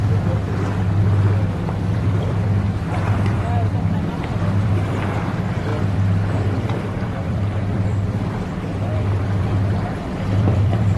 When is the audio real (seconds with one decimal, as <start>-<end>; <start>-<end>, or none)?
0.4-1.4